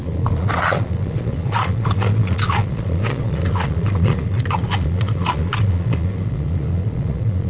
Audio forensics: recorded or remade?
remade